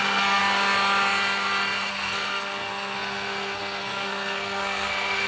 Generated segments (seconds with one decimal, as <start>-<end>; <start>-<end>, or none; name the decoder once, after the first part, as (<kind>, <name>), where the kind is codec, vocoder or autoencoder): 0.0-0.4 (codec, SNAC); 1.9-5.3